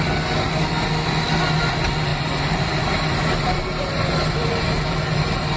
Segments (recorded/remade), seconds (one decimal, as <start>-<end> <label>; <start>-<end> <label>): 0.0-2.1 recorded; 2.1-5.6 remade